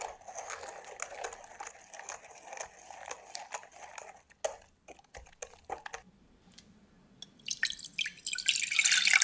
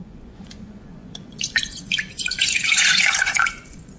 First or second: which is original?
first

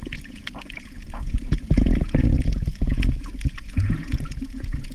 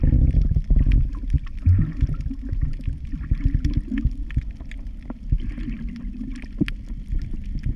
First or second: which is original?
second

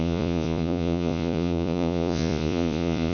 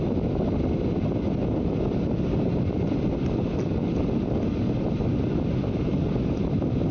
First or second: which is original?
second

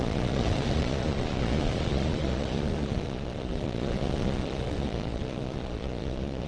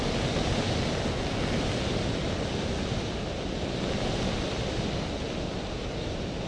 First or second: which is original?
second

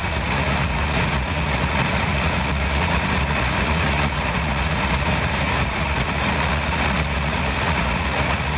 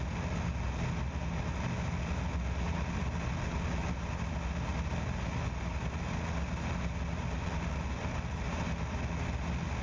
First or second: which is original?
second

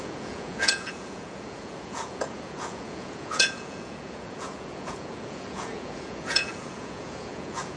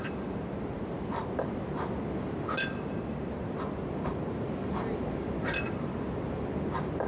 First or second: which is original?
second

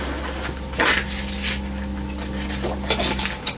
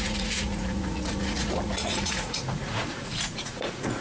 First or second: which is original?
first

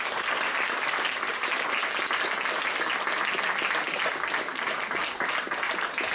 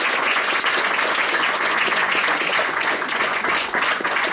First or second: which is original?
first